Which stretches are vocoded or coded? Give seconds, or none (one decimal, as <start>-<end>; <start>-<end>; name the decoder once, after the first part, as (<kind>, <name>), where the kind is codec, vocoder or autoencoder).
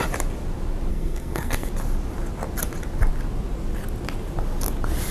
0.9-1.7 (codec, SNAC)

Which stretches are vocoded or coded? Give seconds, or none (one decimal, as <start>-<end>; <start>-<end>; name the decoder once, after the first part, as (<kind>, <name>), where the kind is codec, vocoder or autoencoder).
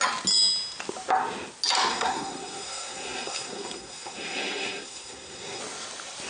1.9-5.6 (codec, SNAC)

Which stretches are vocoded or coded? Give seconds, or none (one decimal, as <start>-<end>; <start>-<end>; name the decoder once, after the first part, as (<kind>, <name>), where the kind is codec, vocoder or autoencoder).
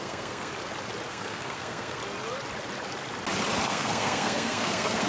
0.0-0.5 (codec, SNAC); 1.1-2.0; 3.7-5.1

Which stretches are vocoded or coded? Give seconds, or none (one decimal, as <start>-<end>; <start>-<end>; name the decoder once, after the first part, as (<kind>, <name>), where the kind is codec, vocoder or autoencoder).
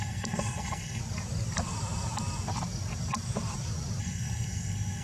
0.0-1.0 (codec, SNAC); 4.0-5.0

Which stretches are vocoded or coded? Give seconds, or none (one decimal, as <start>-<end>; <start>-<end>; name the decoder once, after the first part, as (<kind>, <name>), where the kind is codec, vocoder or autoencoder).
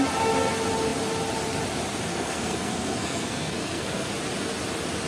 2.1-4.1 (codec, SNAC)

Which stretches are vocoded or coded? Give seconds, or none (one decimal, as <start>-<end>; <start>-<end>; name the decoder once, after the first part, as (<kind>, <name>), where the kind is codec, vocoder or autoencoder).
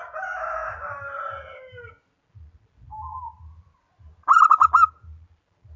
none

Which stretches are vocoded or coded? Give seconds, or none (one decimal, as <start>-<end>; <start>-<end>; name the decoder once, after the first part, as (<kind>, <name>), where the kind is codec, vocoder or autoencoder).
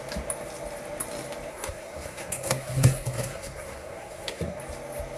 1.5-4.6 (codec, SNAC)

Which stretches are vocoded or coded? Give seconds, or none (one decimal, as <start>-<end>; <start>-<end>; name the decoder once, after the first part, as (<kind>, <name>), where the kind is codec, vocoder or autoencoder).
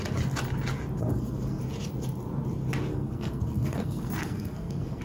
1.1-1.6 (codec, SNAC); 2.9-5.0